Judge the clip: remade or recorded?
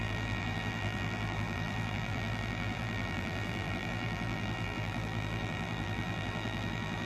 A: remade